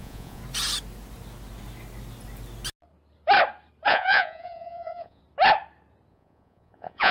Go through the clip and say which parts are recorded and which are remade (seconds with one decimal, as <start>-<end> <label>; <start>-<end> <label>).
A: 0.0-0.4 remade; 0.4-3.9 recorded; 3.9-5.2 remade; 5.2-6.1 recorded; 6.1-7.1 remade